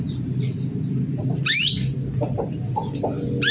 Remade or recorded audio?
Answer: recorded